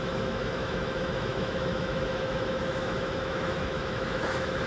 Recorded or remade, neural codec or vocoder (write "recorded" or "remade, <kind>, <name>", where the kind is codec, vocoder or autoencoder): remade, autoencoder, DAC-VAE